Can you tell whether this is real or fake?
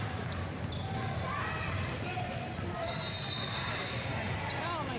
real